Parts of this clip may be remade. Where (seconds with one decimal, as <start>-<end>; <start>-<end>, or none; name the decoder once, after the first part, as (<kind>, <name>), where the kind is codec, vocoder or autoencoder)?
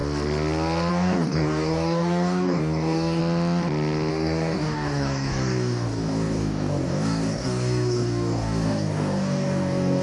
0.9-3.2 (codec, DAC); 4.1-10.0